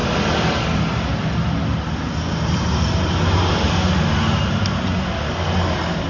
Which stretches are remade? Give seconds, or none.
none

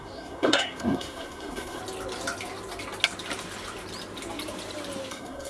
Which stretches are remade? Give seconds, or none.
0.0-1.8 (codec, SNAC); 5.1-5.5

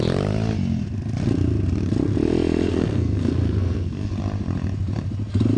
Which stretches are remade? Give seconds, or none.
2.7-4.1 (codec, SNAC)

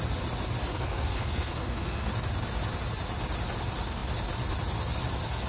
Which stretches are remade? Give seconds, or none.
0.7-2.1 (codec, SNAC)

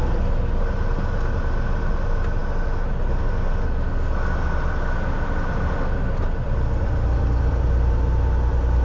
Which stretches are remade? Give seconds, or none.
none

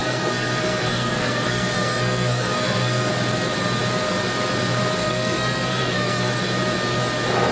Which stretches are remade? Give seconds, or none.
0.0-3.1 (codec, SNAC); 5.0-6.3